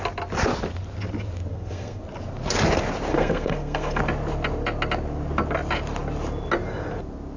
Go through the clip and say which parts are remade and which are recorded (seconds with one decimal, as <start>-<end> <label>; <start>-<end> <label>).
0.0-1.5 recorded; 1.5-2.0 remade; 2.0-3.1 recorded; 3.1-4.0 remade; 4.0-7.4 recorded